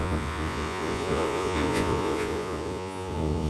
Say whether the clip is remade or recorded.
remade